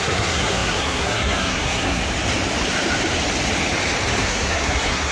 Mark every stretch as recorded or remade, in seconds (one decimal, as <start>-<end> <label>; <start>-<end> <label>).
0.0-2.0 remade; 2.0-4.2 recorded; 4.2-5.1 remade